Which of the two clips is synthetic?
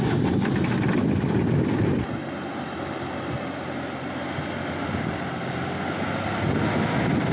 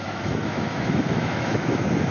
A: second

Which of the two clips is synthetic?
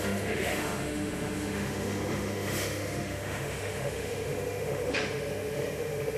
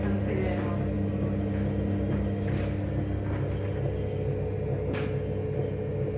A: first